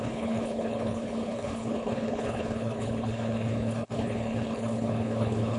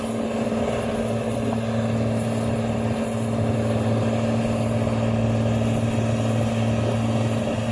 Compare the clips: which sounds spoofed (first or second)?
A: first